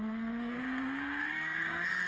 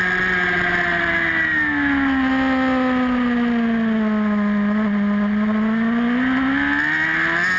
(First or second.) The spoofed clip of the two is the first